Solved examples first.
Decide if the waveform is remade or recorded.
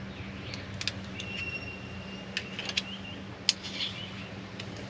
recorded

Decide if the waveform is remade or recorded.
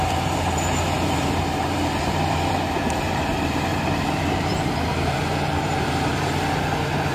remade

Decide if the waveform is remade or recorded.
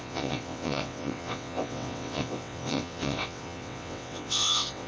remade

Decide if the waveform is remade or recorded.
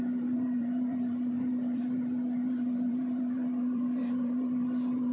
remade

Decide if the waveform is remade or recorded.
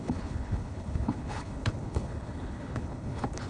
remade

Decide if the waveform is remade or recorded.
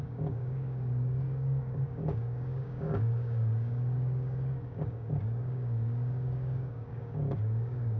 remade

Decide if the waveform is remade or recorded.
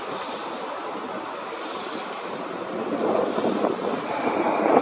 recorded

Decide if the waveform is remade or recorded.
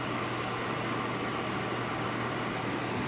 recorded